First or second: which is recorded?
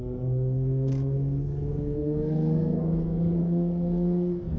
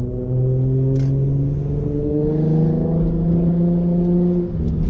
second